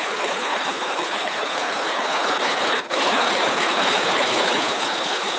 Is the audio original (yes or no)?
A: no